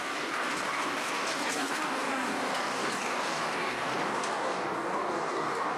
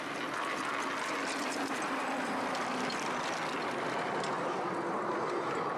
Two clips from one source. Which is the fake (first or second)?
first